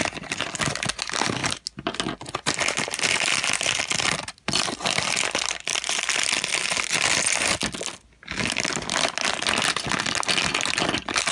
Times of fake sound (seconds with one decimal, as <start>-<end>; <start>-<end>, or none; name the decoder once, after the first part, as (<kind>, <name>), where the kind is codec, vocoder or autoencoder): none